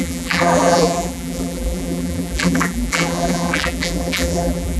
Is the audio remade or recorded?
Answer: remade